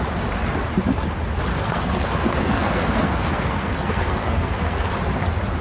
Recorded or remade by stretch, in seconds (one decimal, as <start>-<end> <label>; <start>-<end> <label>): 0.0-1.5 recorded; 1.5-4.9 remade; 4.9-5.6 recorded